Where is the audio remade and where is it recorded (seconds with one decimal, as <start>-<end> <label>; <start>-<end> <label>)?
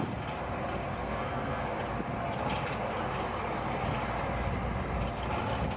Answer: 0.0-1.0 recorded; 1.0-1.6 remade; 1.6-5.8 recorded